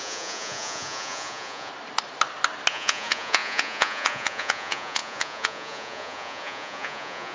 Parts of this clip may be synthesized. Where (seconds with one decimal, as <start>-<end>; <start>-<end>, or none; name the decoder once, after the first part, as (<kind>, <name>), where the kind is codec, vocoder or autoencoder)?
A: 0.0-1.7 (vocoder, Vocos); 2.7-7.3